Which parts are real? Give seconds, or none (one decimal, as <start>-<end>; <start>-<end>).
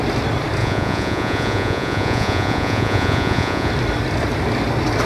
0.0-0.6; 3.7-5.1